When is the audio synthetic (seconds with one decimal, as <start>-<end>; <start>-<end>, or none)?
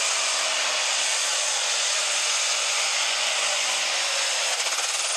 1.2-4.3